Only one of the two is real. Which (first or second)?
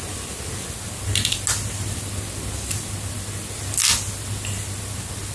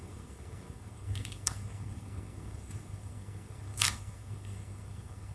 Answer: first